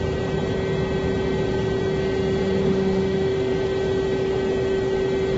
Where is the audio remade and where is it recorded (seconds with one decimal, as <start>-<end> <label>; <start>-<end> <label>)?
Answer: 0.0-2.6 recorded; 2.6-3.5 remade; 3.5-5.4 recorded